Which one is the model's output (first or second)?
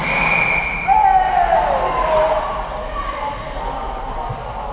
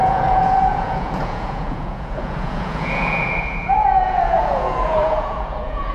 second